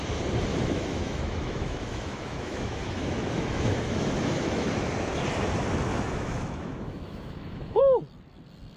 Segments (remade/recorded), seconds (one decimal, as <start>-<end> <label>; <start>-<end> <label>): 0.0-0.5 recorded; 0.5-4.9 remade; 4.9-5.9 recorded; 5.9-7.8 remade; 7.8-8.8 recorded